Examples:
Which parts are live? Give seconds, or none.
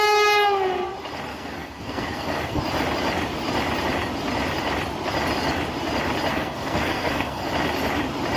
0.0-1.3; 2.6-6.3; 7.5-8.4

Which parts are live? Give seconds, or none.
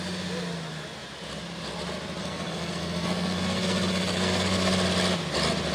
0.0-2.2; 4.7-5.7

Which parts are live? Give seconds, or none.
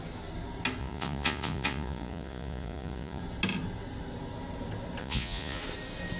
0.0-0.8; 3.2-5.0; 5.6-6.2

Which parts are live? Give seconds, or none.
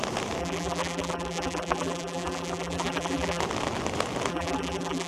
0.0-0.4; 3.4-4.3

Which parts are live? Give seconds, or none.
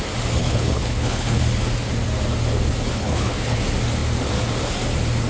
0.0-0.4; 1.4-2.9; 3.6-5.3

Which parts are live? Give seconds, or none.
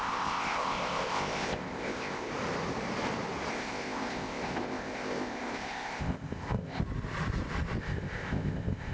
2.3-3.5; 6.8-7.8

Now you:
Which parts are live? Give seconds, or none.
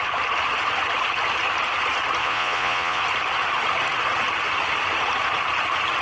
0.0-2.2; 3.0-6.0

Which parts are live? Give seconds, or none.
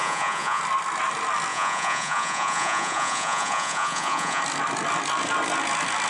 0.6-1.5; 4.4-6.1